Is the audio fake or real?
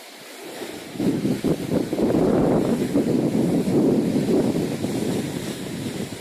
fake